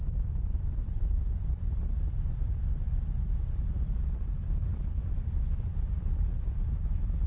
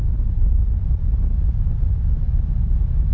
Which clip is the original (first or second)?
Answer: second